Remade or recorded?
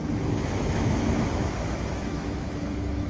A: remade